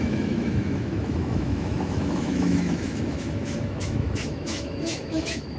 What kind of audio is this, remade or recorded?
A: remade